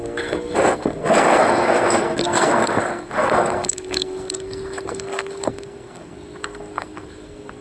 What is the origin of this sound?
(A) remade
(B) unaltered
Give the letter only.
A